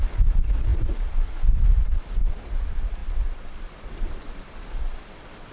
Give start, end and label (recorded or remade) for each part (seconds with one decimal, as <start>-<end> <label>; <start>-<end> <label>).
0.0-5.5 recorded